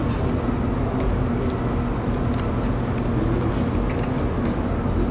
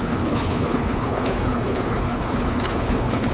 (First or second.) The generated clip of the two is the second